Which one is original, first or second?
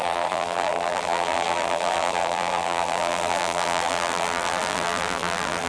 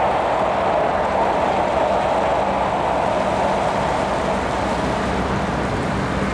second